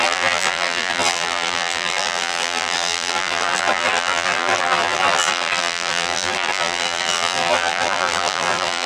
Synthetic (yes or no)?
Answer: yes